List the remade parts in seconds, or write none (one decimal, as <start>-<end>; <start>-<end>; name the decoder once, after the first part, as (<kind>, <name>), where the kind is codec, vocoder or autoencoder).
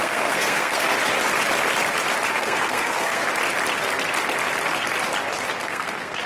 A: 0.0-0.9 (codec, SNAC); 2.4-3.2; 5.6-6.3